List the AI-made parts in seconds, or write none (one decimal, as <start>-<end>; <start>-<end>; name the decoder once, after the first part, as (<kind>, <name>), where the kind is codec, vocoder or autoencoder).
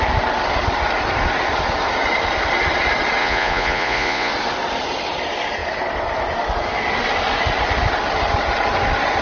3.2-4.3 (vocoder, Vocos)